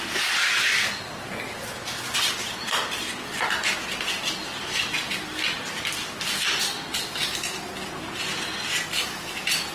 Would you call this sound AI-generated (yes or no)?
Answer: no